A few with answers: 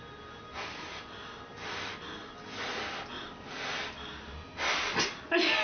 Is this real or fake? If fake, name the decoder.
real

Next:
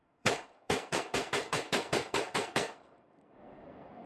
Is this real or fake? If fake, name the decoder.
fake, codec, SNAC